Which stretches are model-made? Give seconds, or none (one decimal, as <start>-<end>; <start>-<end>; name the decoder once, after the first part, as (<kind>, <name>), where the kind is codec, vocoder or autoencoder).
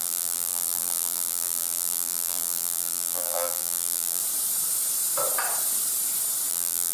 0.0-4.2 (vocoder, BigVGAN v2); 6.5-6.9